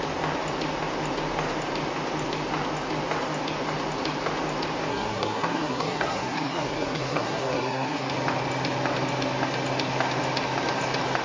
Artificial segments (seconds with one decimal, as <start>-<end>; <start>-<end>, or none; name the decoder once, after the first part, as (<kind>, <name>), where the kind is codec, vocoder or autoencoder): 4.9-8.1 (codec, SNAC)